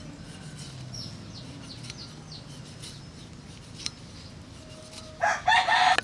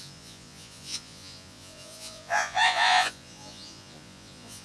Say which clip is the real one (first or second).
first